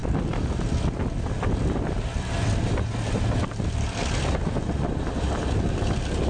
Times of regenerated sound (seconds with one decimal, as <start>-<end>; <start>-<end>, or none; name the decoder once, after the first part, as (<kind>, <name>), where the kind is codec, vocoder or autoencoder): none